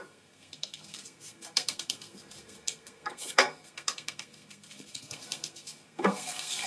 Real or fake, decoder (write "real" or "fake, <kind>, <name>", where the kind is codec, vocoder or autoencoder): fake, codec, SNAC